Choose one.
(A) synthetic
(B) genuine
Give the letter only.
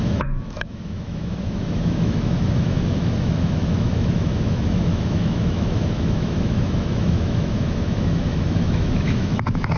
A